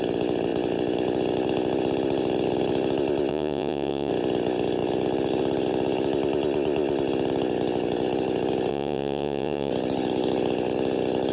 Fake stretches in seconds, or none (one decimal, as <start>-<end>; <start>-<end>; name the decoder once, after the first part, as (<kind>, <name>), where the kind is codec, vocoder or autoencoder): 3.3-4.1 (vocoder, Vocos); 8.7-9.7

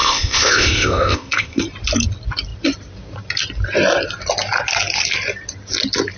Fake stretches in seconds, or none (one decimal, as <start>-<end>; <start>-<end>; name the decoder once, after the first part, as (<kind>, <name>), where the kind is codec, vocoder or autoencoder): 0.0-1.6 (codec, ZipCodec)